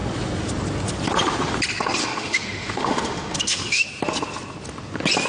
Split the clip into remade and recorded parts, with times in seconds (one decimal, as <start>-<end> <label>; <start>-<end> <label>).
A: 0.0-2.0 recorded; 2.0-3.8 remade; 3.8-5.3 recorded